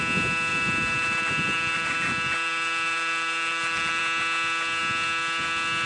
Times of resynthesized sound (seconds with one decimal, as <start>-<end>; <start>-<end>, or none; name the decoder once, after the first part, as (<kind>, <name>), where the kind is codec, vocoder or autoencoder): 0.5-4.0 (vocoder, BigVGAN v2)